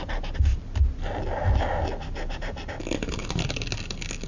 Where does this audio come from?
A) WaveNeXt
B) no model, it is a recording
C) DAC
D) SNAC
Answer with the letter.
B